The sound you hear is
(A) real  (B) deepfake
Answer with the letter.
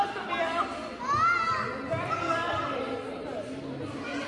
A